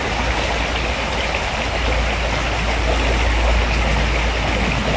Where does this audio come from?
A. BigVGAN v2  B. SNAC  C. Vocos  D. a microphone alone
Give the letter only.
D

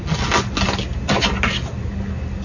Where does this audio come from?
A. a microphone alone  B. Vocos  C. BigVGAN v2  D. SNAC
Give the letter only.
A